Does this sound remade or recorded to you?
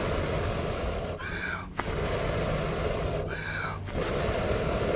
recorded